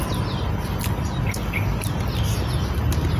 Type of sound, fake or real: real